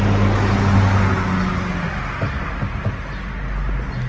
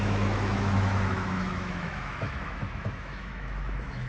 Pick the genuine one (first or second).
first